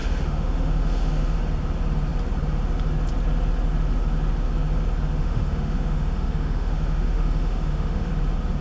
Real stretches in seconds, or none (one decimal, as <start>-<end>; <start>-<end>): 1.4-5.2; 8.1-8.6